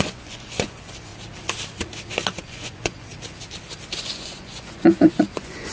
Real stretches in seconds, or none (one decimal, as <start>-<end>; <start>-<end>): 1.1-2.4; 3.1-4.0